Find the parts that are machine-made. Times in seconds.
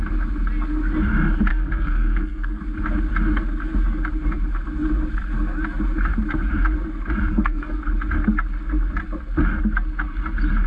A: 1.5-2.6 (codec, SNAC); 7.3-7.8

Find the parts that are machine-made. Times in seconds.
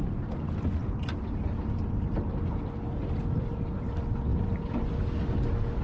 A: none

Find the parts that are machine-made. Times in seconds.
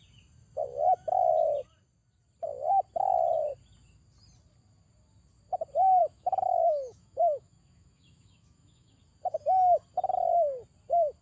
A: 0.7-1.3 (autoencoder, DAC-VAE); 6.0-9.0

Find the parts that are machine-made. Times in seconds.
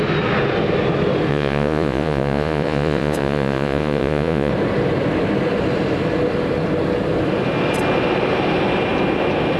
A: 1.3-4.5 (vocoder, Vocos)